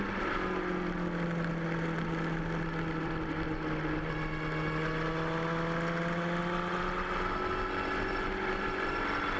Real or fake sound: real